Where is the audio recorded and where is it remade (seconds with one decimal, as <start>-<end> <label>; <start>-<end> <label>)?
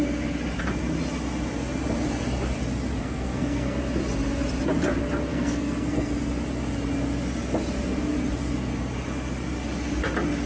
0.0-3.0 recorded; 3.0-3.8 remade; 3.8-5.3 recorded; 5.3-6.1 remade; 6.1-10.5 recorded